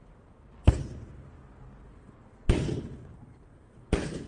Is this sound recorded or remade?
recorded